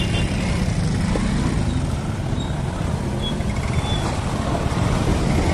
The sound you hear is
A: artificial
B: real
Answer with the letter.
B